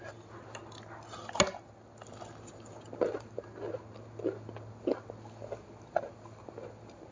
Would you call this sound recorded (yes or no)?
yes